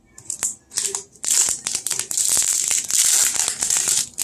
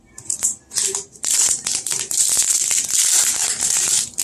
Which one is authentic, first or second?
first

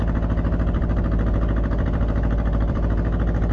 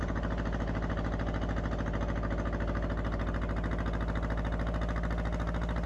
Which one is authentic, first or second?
second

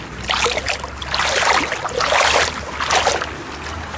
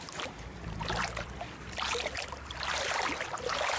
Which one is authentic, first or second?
first